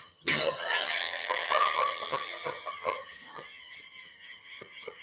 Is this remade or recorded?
remade